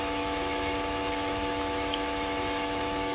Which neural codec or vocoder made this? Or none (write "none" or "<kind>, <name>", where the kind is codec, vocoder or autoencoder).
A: autoencoder, DAC-VAE